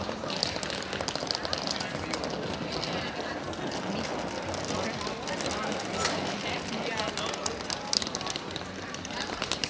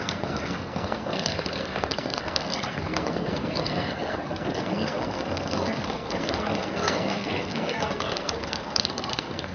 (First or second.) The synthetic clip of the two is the second